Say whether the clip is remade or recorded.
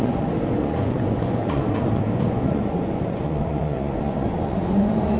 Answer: remade